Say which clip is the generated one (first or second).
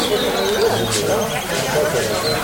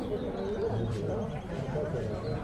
second